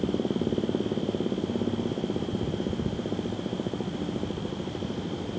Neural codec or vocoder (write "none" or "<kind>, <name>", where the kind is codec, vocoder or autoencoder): none